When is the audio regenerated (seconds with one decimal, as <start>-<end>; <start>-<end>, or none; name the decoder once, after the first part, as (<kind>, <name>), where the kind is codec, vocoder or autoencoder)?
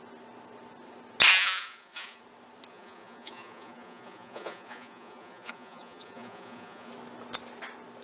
1.3-2.2 (vocoder, Vocos); 2.7-6.9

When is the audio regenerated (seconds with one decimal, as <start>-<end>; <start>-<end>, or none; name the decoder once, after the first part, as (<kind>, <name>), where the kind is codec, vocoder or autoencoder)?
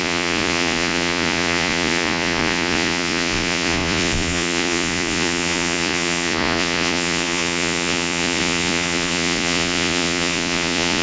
0.0-11.0 (vocoder, Vocos)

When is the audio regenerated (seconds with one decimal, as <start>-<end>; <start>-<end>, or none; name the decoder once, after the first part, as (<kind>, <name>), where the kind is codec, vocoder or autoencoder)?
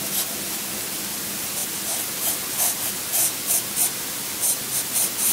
none